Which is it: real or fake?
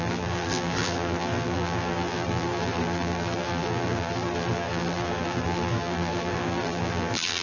fake